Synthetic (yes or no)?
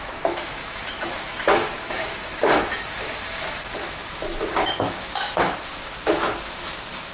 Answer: yes